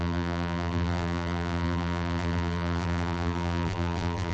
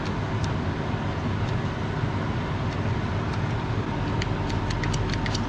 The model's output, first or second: first